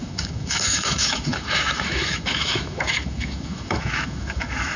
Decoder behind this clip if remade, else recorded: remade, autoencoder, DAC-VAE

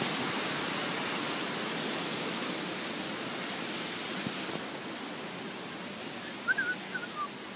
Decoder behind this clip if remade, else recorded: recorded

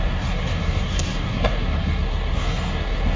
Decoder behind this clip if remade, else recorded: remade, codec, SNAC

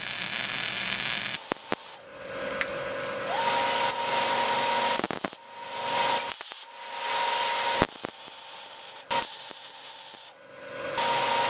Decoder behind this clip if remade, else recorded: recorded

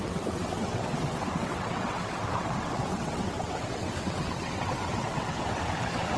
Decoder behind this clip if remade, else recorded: remade, vocoder, WaveNeXt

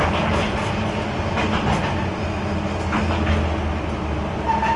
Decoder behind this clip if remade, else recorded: recorded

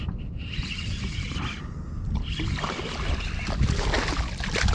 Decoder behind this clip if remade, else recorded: recorded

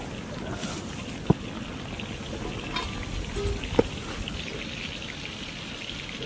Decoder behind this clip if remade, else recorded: recorded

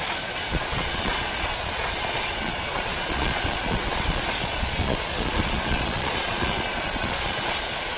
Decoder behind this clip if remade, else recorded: remade, vocoder, Vocos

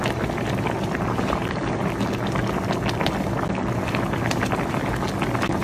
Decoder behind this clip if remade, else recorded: recorded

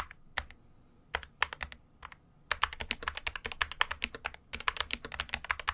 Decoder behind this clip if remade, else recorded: recorded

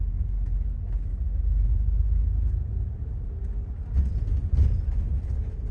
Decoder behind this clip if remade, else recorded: recorded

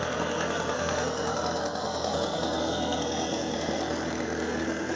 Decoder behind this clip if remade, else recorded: remade, codec, SNAC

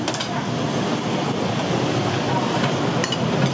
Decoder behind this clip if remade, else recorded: recorded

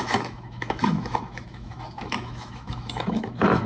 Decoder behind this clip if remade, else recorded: remade, autoencoder, DAC-VAE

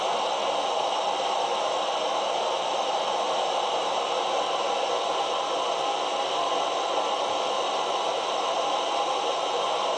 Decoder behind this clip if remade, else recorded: recorded